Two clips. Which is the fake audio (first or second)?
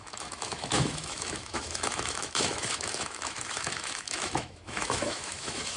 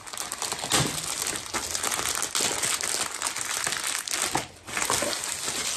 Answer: first